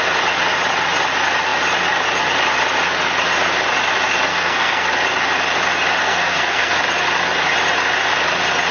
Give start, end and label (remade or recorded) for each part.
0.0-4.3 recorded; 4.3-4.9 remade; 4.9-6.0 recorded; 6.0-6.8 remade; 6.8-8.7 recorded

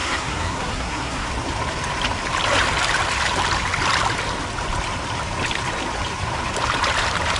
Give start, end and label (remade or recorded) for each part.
0.0-1.3 remade; 1.3-7.4 recorded

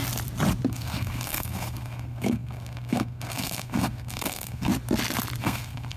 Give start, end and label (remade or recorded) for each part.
0.0-0.7 recorded; 0.7-4.7 remade; 4.7-5.4 recorded; 5.4-6.0 remade